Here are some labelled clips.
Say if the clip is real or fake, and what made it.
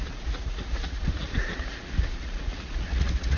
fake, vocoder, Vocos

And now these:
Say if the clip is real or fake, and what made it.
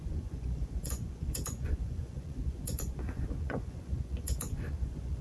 fake, vocoder, Vocos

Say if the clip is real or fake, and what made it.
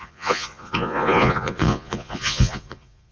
fake, vocoder, Vocos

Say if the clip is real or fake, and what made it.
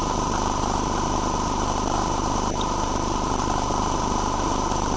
real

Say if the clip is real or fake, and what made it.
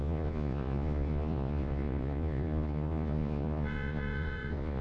fake, vocoder, Vocos